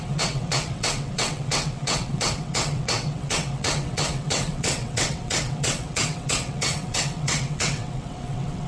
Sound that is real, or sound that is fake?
fake